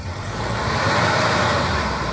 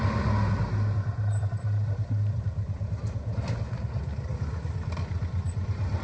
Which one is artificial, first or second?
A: first